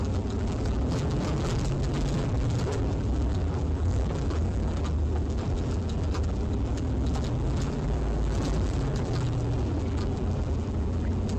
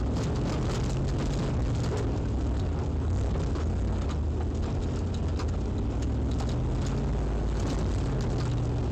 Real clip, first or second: second